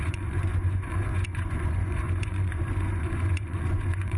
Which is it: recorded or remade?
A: remade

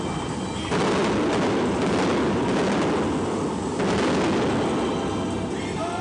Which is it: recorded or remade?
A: recorded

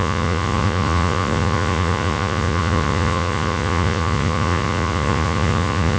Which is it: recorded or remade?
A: remade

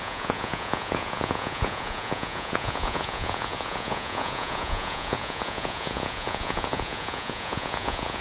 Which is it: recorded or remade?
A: remade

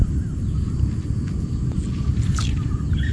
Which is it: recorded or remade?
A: recorded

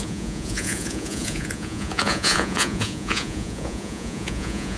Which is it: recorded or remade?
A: remade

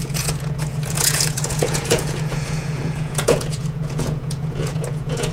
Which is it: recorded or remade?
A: remade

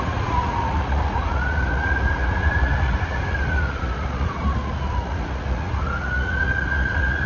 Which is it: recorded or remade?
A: remade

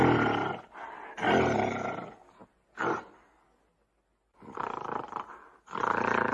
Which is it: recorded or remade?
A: recorded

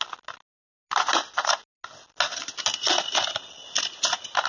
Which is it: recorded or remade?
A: recorded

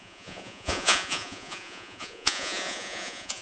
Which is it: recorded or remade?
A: remade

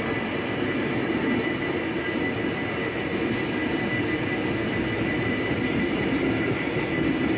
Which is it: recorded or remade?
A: recorded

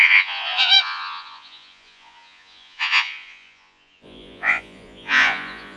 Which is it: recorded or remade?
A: remade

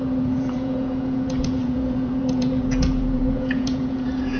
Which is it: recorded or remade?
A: remade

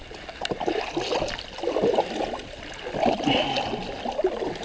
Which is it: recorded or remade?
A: recorded